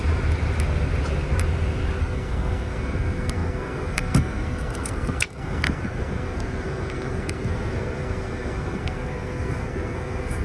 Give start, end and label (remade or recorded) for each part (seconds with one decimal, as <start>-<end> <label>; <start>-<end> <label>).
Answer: 0.0-2.0 recorded; 2.0-10.4 remade